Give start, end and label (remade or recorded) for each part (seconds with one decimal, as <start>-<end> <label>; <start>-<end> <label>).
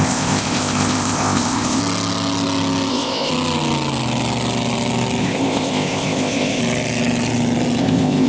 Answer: 0.0-1.8 remade; 1.8-2.9 recorded; 2.9-3.3 remade; 3.3-5.2 recorded; 5.2-6.6 remade; 6.6-7.8 recorded; 7.8-8.3 remade